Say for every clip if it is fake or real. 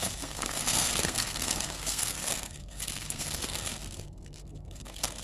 fake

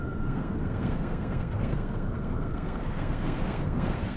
fake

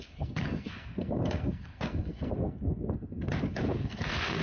fake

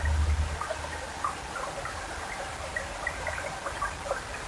real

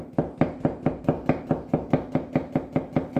real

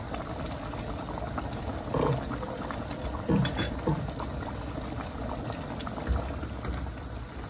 real